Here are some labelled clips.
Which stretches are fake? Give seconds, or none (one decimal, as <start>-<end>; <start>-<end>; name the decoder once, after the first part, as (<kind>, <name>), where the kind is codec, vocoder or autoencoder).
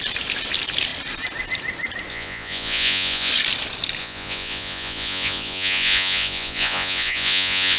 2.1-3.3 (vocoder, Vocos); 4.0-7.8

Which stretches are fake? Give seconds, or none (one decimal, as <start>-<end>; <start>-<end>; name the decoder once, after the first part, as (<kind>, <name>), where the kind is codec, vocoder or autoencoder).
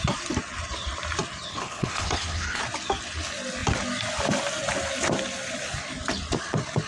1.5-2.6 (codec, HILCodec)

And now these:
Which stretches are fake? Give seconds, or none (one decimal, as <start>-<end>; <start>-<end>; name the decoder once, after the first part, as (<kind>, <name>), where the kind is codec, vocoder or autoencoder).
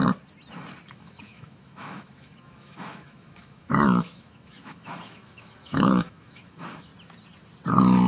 0.9-6.9 (autoencoder, DAC-VAE)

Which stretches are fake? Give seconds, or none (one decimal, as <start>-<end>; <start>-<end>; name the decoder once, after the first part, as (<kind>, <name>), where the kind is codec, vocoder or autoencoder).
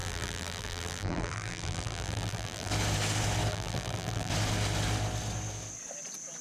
0.0-2.7 (vocoder, BigVGAN v2); 3.5-4.3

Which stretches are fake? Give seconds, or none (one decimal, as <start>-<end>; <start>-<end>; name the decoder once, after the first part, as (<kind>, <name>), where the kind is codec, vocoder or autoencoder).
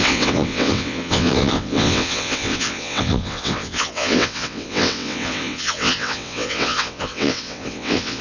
0.0-8.2 (vocoder, WaveNeXt)